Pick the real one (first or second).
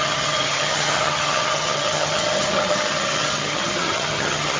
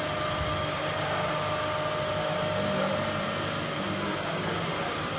second